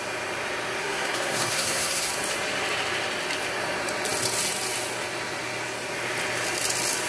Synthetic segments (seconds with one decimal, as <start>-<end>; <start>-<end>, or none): 0.8-2.1